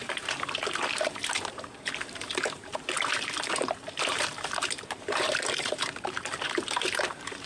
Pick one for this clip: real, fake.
fake